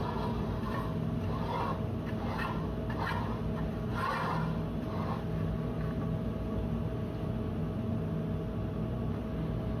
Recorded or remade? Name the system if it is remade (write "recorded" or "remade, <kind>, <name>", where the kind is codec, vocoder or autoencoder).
recorded